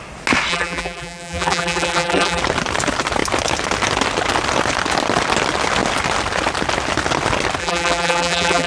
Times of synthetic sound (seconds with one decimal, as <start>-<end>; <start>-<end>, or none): 0.5-2.4; 7.6-8.7